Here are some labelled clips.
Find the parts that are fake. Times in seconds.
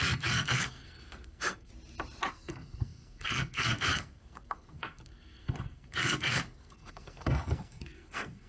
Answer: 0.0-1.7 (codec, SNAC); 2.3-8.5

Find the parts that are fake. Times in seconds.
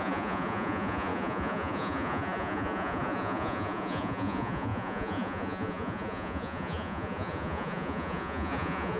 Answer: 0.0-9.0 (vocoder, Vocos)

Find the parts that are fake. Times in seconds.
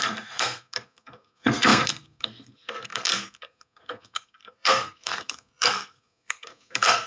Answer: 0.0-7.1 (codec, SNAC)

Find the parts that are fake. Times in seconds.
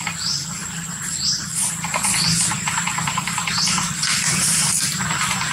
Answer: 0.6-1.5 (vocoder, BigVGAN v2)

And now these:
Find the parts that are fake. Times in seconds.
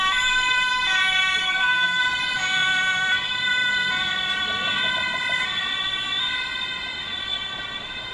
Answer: 1.4-2.0 (codec, SNAC)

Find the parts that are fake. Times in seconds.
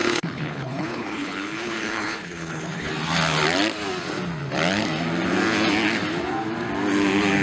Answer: 0.0-2.9 (codec, HILCodec)